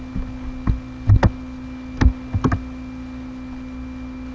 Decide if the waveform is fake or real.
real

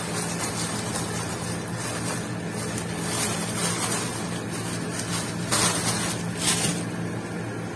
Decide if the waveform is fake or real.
real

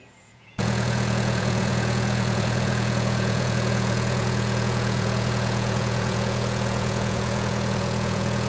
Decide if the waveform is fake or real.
fake